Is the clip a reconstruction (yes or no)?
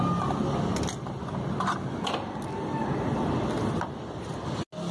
no